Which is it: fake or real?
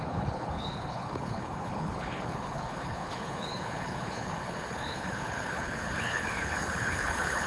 fake